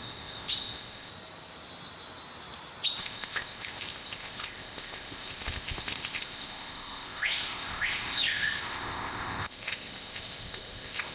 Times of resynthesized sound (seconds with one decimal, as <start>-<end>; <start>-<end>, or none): 0.0-1.1; 3.0-11.1